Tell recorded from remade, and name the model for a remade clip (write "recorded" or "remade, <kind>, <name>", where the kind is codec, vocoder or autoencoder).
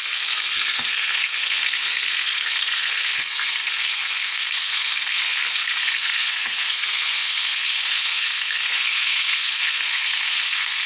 remade, codec, SNAC